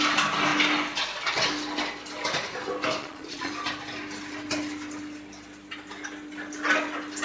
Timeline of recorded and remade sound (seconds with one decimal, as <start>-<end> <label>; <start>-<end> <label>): 0.0-3.0 recorded; 3.0-3.5 remade; 3.5-7.2 recorded